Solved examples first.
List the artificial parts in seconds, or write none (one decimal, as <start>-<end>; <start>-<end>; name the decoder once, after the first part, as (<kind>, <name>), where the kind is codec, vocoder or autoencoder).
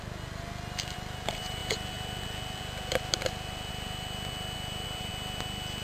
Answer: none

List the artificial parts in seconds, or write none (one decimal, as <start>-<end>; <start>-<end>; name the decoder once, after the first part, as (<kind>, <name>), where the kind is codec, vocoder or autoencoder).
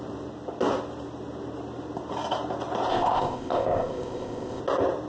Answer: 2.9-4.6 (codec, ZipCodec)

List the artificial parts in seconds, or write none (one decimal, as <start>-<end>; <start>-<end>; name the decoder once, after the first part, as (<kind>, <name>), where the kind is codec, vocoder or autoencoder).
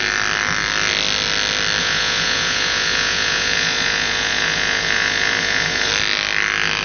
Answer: 1.8-5.9 (vocoder, Vocos)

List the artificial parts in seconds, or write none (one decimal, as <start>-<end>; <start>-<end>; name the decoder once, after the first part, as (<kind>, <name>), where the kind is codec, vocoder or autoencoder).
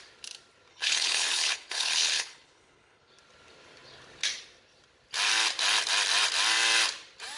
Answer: 0.7-3.1 (codec, HILCodec)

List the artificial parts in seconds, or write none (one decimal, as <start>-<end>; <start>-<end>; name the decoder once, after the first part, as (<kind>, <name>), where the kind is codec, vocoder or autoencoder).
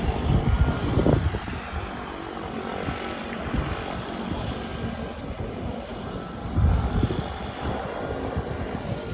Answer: 0.0-4.7 (vocoder, BigVGAN v2); 5.2-5.9